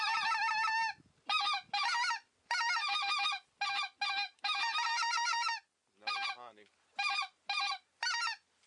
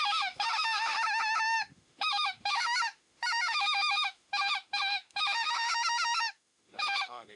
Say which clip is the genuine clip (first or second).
first